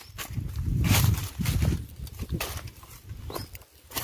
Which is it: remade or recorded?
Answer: remade